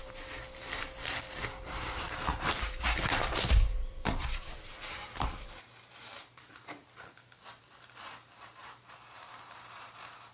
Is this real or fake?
fake